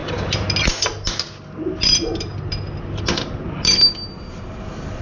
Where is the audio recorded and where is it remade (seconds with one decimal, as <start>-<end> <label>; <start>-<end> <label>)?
0.0-5.0 recorded